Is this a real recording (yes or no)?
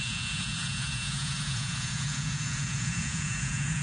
no